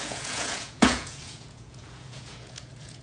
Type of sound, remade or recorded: remade